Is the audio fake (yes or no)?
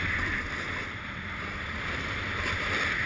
no